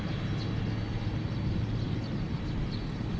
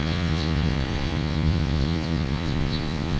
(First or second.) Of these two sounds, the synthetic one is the second